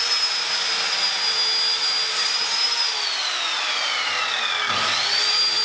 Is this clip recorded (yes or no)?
yes